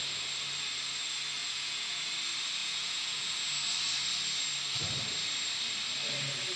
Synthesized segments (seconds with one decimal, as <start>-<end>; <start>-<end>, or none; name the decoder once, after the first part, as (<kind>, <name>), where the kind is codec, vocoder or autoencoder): 1.4-2.1 (vocoder, Vocos); 2.6-3.5